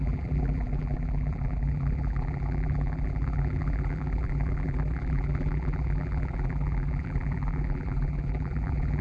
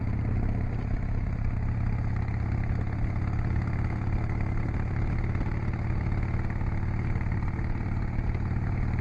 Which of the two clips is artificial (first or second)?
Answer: first